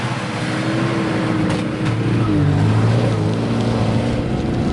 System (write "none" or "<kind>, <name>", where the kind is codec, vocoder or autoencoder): none